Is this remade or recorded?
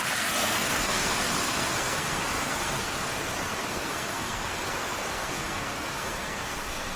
remade